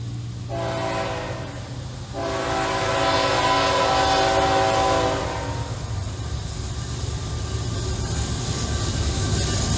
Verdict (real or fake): real